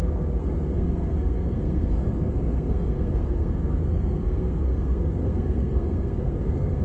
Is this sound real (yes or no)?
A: no